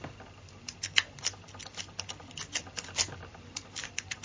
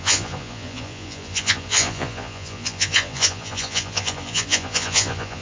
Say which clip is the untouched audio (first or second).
first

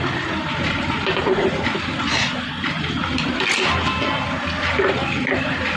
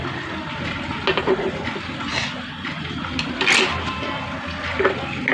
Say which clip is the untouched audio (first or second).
second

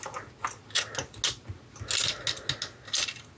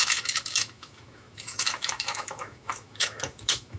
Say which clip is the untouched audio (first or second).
first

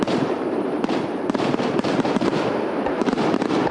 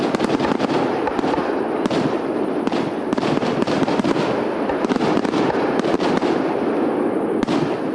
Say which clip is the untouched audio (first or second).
second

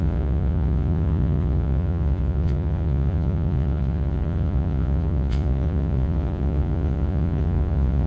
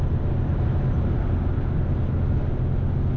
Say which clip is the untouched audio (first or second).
second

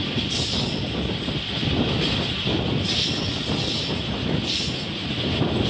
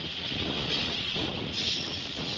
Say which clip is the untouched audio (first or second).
first